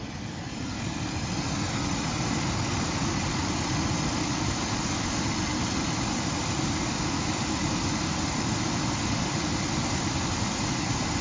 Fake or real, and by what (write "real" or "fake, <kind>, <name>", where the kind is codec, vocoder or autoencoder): real